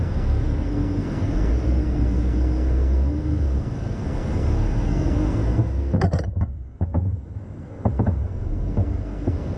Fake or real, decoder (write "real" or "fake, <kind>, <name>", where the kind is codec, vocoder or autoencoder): fake, codec, SNAC